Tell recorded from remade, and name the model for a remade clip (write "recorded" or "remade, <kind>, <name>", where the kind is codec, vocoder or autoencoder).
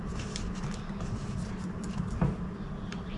recorded